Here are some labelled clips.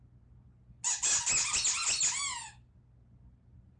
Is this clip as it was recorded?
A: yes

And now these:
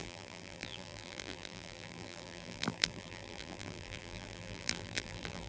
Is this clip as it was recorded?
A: no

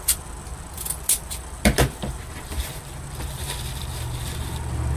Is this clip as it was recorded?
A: yes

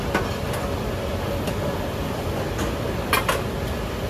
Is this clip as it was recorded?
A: yes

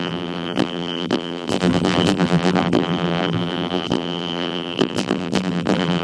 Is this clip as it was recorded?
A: no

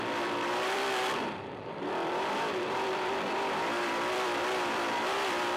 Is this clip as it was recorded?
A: no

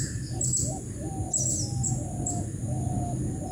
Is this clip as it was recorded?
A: yes